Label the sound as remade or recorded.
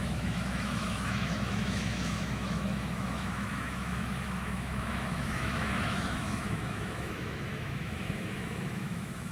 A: remade